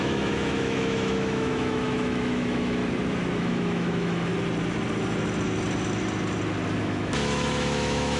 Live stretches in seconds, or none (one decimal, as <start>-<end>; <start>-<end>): 2.8-3.4; 4.3-6.8

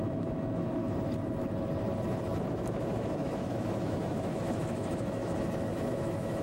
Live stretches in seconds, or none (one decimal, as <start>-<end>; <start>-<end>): 0.8-2.5

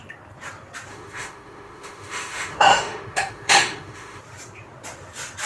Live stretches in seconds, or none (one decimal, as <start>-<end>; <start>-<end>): 0.0-0.9; 4.2-5.5

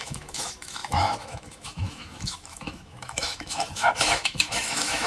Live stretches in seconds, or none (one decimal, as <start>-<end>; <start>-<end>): none

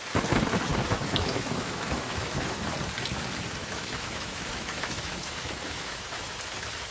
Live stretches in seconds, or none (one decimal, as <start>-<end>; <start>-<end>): 0.0-0.7; 2.7-3.6; 6.4-6.9

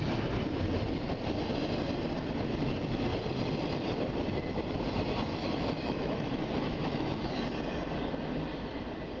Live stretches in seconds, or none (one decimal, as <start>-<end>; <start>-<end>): 0.0-5.3; 7.4-9.2

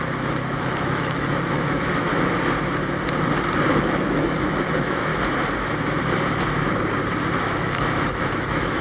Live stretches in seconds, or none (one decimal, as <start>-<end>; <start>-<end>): 2.1-3.7; 5.1-7.4